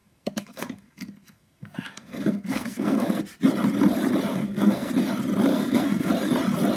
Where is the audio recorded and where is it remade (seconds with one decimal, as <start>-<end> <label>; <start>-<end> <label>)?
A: 0.0-3.2 remade; 3.2-4.3 recorded; 4.3-4.9 remade; 4.9-5.5 recorded; 5.5-6.1 remade; 6.1-6.8 recorded